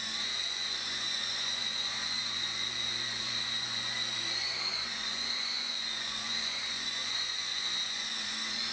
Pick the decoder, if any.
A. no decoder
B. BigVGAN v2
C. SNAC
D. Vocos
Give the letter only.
D